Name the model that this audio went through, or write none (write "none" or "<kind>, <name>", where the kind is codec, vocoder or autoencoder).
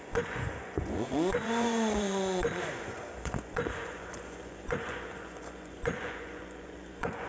vocoder, Vocos